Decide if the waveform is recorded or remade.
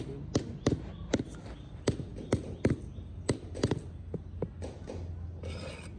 recorded